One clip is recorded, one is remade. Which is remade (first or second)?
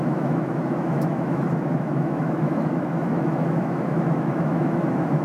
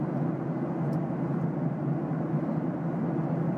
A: first